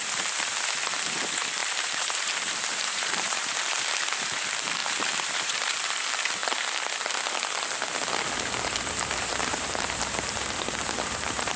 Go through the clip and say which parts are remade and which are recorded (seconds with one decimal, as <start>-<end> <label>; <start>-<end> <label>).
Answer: 0.0-1.6 recorded; 1.6-3.8 remade; 3.8-4.8 recorded; 4.8-5.8 remade; 5.8-9.3 recorded; 9.3-11.6 remade